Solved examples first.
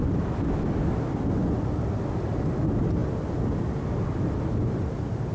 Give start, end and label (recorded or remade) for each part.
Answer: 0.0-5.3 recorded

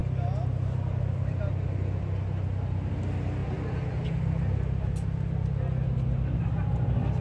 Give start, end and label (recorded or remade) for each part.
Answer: 0.0-7.2 recorded

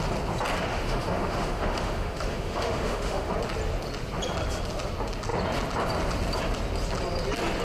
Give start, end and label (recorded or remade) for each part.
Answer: 0.0-0.7 recorded; 0.7-3.3 remade; 3.3-7.6 recorded